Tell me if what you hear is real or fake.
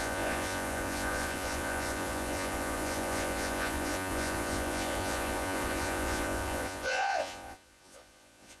fake